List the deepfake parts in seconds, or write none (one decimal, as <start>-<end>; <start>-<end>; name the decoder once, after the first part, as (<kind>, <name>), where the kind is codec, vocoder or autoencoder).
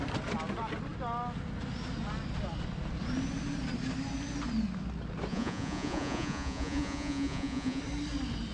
5.3-7.8 (vocoder, Vocos)